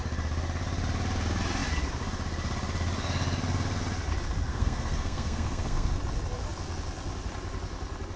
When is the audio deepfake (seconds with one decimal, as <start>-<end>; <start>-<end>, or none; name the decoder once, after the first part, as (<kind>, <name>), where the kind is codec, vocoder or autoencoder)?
4.5-6.0 (codec, SNAC)